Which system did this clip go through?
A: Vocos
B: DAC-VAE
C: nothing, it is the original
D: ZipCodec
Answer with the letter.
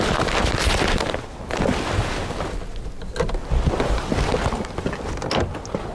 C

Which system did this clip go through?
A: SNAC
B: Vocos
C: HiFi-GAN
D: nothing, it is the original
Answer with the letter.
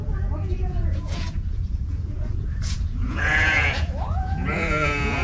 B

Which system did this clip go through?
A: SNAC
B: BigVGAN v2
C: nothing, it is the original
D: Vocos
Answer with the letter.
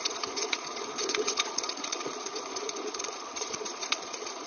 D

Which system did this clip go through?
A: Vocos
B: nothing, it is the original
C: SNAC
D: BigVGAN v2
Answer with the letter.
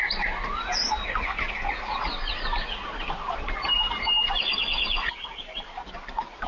B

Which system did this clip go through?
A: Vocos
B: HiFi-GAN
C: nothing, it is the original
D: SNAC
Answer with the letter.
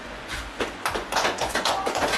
A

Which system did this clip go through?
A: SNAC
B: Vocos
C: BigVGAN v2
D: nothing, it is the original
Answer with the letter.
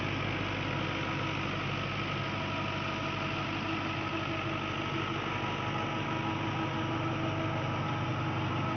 D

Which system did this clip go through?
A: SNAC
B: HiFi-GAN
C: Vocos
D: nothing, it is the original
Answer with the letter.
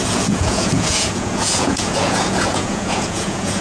C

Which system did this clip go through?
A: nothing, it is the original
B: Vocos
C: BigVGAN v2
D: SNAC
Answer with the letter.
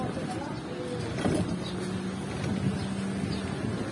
A